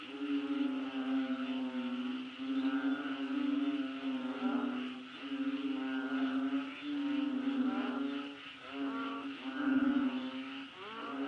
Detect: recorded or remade recorded